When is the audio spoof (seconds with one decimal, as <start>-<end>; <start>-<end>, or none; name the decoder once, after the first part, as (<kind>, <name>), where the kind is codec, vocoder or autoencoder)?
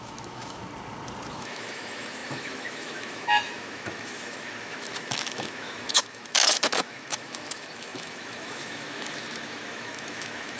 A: 0.0-0.6 (autoencoder, DAC-VAE); 1.3-10.6